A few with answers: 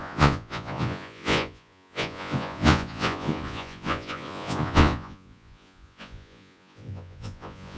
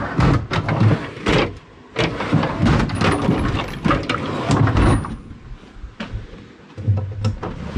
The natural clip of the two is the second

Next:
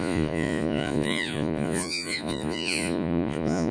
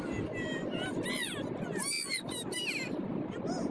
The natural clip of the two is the second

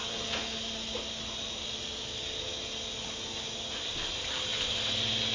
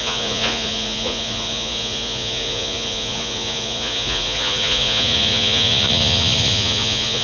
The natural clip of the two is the first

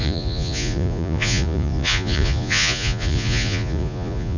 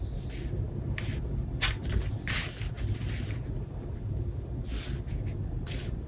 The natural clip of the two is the second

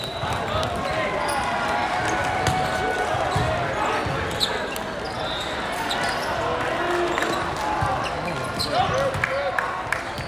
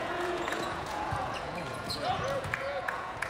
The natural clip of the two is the first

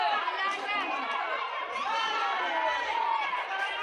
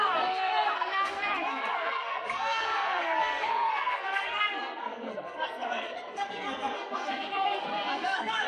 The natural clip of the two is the first